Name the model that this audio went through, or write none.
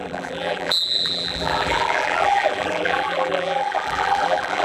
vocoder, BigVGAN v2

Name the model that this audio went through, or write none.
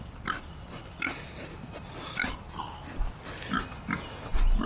none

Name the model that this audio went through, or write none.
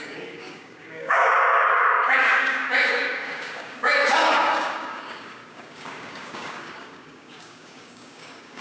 codec, DAC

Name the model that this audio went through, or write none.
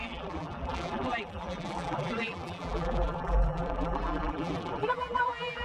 vocoder, BigVGAN v2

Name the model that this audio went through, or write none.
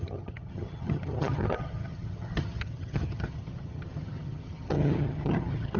vocoder, HiFi-GAN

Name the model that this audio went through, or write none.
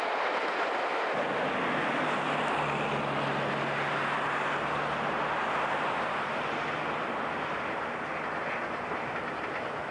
none